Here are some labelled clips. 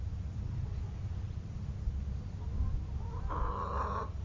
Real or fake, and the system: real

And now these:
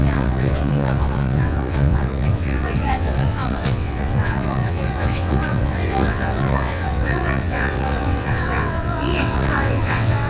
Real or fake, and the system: fake, vocoder, WaveNeXt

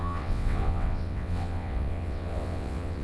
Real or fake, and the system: fake, vocoder, WaveNeXt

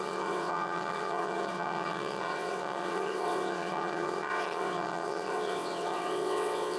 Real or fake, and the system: fake, vocoder, WaveNeXt